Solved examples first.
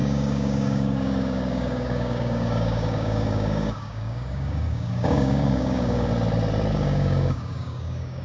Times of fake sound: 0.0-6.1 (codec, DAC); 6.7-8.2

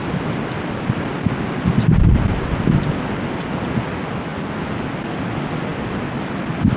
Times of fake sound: none